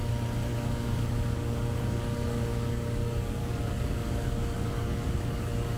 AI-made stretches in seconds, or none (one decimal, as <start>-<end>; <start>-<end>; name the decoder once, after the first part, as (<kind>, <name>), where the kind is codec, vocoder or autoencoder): 0.5-5.8 (codec, DAC)